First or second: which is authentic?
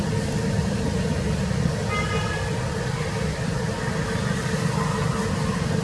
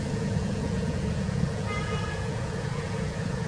first